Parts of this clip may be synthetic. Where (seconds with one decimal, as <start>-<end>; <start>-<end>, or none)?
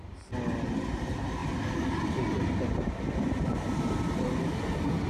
none